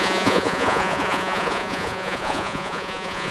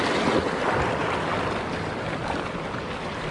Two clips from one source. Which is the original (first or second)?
second